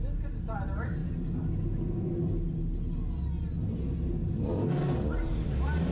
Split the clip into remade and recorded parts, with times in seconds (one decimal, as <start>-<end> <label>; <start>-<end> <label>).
0.0-5.9 recorded